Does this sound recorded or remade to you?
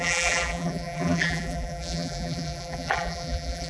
remade